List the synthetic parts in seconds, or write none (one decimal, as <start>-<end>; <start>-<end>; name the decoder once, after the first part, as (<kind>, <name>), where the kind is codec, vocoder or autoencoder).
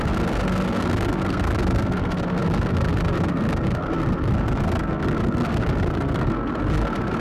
0.0-7.2 (codec, SNAC)